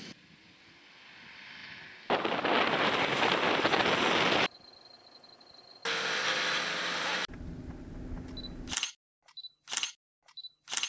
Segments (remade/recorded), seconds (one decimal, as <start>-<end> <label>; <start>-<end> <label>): 0.0-10.9 recorded